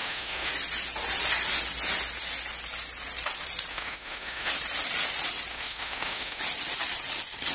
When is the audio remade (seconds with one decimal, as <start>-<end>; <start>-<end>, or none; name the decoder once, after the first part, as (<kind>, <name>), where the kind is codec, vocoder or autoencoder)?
0.0-0.5 (autoencoder, DAC-VAE); 3.7-4.5; 5.5-6.4